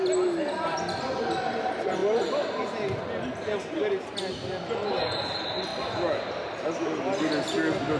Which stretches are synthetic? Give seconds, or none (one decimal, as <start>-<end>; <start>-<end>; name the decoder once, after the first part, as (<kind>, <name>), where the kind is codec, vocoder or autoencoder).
none